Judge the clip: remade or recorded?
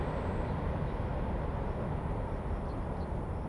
recorded